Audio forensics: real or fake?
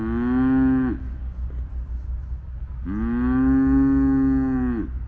real